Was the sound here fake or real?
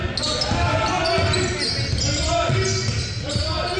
real